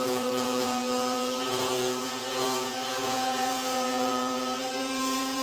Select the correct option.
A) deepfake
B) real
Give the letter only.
A